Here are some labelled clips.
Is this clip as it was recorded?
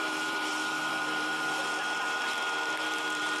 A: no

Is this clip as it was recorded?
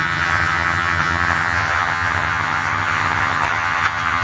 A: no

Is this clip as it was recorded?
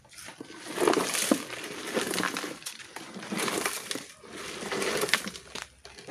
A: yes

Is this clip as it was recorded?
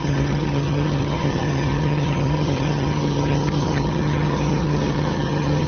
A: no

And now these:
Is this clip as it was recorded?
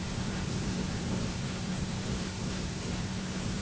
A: no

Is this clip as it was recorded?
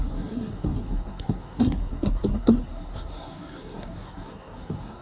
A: no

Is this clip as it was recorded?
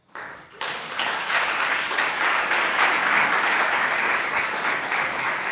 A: no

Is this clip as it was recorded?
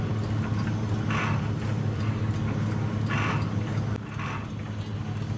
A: yes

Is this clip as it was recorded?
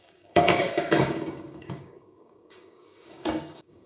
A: no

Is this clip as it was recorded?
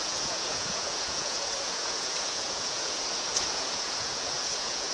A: no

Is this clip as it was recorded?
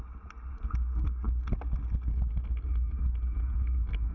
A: yes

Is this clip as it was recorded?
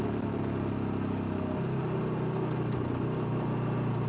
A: yes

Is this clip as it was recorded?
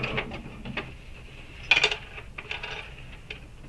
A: yes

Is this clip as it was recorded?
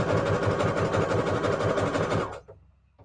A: yes